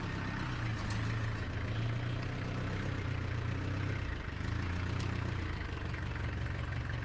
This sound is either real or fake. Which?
real